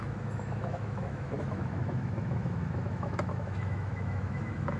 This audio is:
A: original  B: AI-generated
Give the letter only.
B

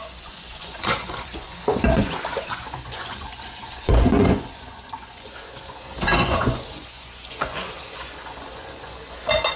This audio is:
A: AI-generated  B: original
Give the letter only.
A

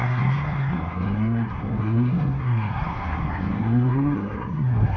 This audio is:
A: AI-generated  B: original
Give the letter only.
A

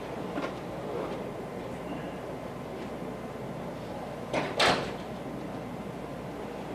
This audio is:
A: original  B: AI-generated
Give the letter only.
A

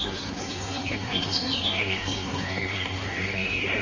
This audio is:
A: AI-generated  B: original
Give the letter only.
A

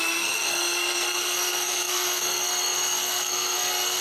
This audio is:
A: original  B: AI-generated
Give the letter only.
B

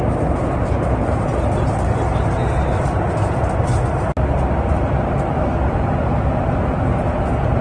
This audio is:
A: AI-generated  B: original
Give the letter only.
B